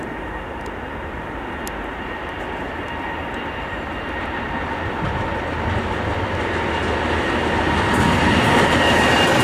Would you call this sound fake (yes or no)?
no